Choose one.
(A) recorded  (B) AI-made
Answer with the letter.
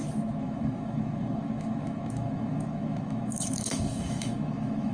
B